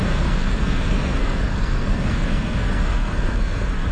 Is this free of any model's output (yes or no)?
no